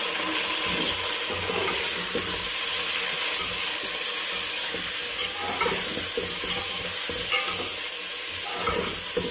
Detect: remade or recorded recorded